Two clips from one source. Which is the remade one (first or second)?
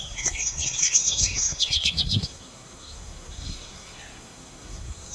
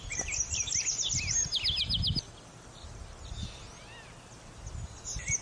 first